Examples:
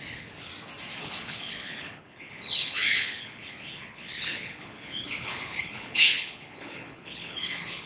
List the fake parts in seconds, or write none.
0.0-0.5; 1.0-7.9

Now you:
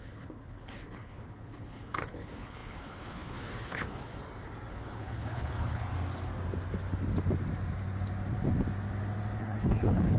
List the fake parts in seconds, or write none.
0.0-4.2; 4.7-5.9; 9.4-10.2

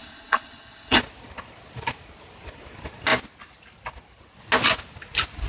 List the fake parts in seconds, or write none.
0.0-1.0